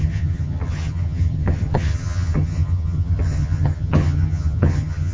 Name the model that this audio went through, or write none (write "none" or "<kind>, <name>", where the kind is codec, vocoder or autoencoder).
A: vocoder, HiFi-GAN